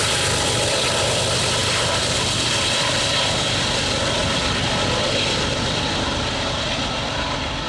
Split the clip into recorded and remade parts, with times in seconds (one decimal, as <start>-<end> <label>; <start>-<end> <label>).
0.0-7.7 recorded